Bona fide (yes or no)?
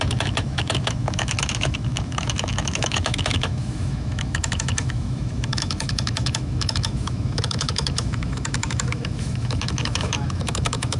no